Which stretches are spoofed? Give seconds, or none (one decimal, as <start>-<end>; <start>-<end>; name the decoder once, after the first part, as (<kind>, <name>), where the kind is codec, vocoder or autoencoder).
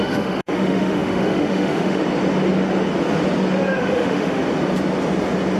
0.0-2.0 (autoencoder, DAC-VAE); 3.8-4.4